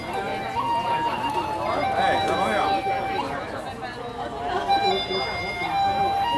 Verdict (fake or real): real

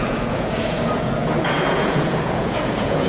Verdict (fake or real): fake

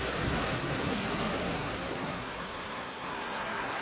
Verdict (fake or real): fake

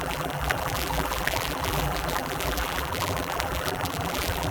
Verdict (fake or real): fake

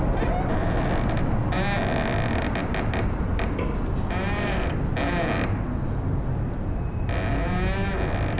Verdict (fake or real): real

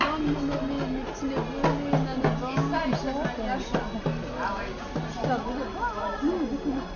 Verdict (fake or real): real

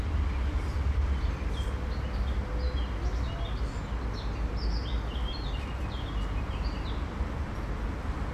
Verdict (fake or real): real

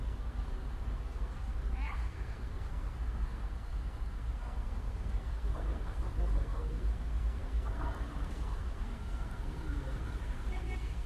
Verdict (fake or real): fake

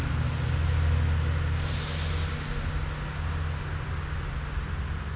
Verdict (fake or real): real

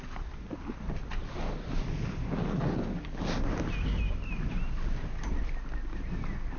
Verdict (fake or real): real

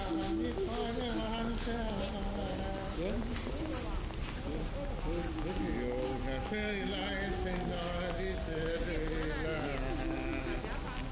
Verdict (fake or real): real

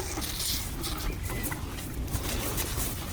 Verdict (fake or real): real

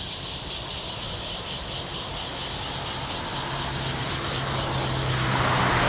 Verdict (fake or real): real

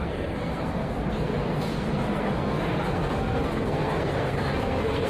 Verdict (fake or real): fake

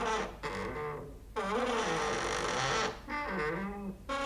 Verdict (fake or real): real